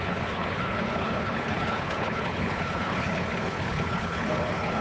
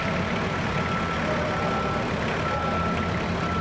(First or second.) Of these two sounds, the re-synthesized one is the first